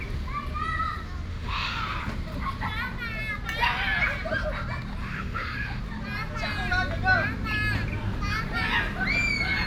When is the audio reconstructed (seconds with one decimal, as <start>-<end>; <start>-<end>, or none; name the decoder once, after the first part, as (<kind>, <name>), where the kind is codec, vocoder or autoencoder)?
1.3-1.8 (autoencoder, DAC-VAE); 5.0-5.8

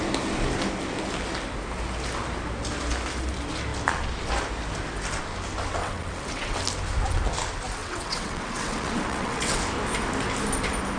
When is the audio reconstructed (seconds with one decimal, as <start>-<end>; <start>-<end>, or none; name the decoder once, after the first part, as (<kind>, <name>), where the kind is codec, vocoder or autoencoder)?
5.8-6.6 (vocoder, WaveNeXt); 7.8-9.6

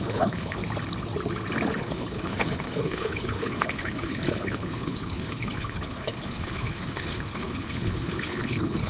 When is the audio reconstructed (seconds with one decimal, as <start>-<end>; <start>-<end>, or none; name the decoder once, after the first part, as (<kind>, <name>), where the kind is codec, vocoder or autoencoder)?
0.0-0.6 (codec, HILCodec); 1.8-8.9

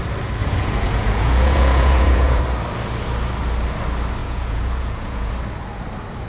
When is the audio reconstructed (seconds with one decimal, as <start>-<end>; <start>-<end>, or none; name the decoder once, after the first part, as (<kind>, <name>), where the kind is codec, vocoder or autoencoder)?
0.4-2.4 (vocoder, Vocos); 4.2-5.3

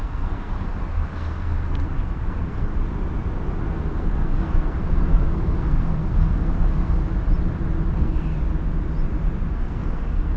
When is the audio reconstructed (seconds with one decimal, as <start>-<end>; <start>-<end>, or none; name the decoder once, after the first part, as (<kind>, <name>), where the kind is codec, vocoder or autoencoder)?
0.0-2.7 (codec, SNAC); 3.7-7.0; 7.9-8.4; 9.5-10.4